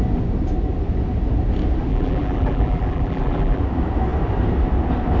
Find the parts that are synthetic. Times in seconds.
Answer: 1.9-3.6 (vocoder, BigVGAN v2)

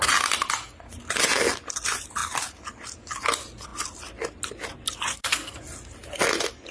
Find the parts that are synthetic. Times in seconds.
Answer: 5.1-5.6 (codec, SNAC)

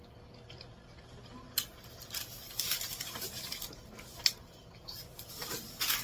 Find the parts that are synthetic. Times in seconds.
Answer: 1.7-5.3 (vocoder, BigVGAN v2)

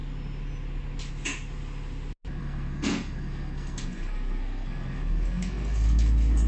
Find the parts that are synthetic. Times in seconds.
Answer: 2.4-6.5 (codec, SNAC)